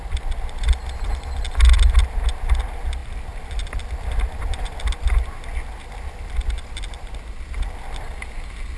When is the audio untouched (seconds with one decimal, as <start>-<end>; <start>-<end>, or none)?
0.0-8.8